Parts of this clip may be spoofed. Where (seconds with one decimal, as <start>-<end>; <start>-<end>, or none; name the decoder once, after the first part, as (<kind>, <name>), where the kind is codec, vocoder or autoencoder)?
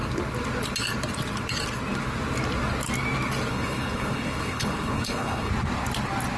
3.5-5.5 (codec, HILCodec)